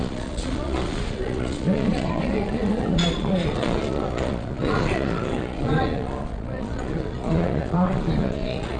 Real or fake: fake